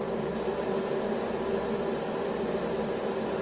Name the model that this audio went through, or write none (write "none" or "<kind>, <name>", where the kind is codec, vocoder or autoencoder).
none